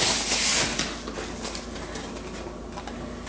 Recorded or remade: recorded